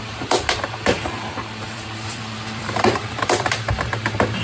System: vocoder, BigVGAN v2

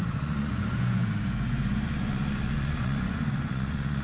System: vocoder, Vocos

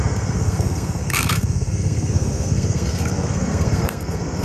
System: codec, SNAC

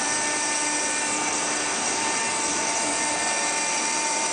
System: vocoder, BigVGAN v2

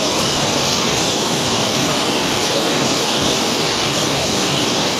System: codec, DAC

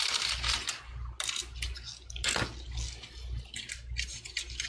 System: none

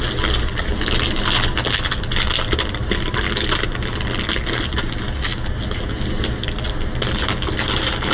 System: none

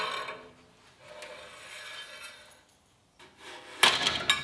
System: none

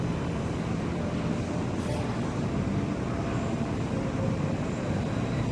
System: none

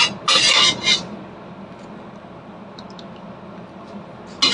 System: none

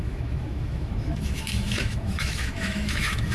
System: autoencoder, DAC-VAE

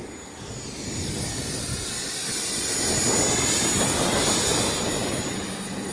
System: none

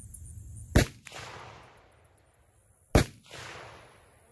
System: none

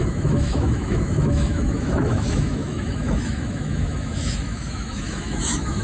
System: autoencoder, DAC-VAE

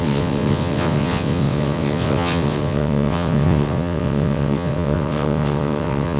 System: vocoder, WaveNeXt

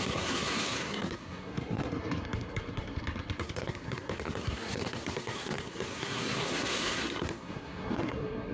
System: codec, SNAC